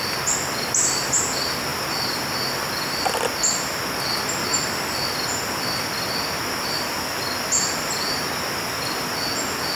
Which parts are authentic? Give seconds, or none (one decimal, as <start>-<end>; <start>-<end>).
0.0-9.7